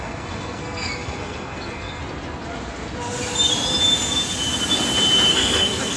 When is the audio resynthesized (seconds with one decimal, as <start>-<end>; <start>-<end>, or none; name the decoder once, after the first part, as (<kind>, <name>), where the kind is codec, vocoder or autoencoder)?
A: 0.0-2.0 (codec, SNAC); 5.3-6.0